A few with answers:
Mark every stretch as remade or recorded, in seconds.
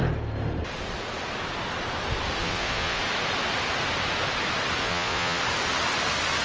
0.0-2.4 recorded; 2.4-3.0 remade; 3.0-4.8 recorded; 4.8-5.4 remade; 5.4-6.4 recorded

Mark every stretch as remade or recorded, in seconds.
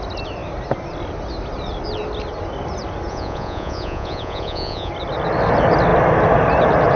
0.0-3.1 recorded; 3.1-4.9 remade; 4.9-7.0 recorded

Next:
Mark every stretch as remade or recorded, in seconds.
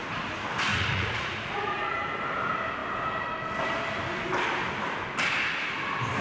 0.0-0.7 recorded; 0.7-2.0 remade; 2.0-6.2 recorded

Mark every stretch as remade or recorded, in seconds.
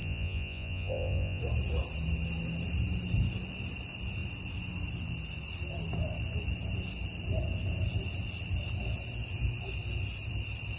0.0-1.4 remade; 1.4-10.8 recorded